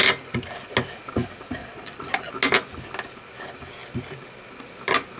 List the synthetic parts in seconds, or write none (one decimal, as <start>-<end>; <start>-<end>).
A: 1.6-2.3